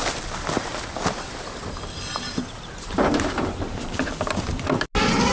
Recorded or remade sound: recorded